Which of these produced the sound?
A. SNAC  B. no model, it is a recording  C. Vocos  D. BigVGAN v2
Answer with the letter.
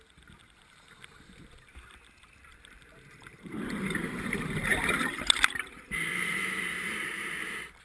D